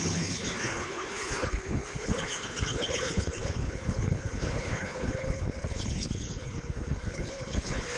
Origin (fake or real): fake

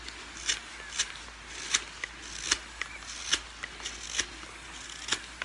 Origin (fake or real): real